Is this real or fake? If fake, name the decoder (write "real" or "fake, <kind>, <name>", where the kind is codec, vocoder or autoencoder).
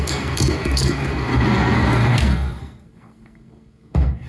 fake, codec, SNAC